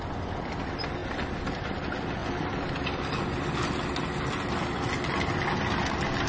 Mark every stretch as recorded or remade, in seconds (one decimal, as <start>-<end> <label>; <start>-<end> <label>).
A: 0.0-6.3 recorded